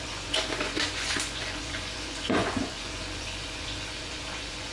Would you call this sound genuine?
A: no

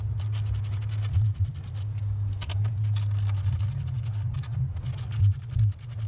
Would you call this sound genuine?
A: yes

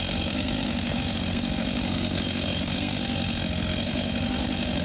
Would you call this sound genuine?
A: no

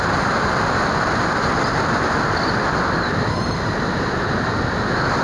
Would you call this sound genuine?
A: yes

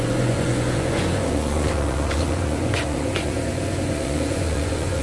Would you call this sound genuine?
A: no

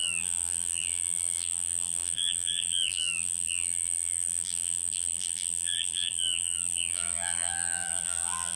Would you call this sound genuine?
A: no